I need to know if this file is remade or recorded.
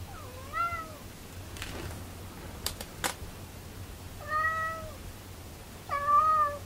recorded